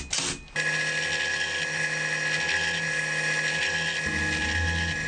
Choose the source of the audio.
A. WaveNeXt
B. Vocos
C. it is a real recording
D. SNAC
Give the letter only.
C